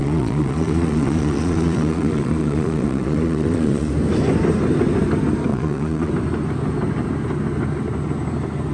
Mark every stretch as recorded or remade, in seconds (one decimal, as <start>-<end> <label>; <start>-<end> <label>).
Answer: 0.0-3.9 remade; 3.9-5.5 recorded; 5.5-6.1 remade; 6.1-8.7 recorded